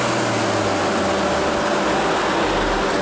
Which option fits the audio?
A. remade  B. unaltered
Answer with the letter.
B